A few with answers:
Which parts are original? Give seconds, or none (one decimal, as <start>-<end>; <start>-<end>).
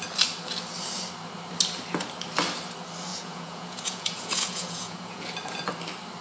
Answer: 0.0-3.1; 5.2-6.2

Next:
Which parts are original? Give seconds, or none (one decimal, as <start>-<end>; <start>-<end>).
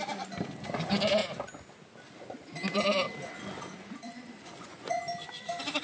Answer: 0.0-4.1; 5.0-5.8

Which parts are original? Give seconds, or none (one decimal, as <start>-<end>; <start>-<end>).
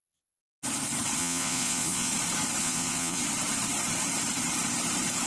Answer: 0.4-1.2; 2.1-2.6; 3.2-5.3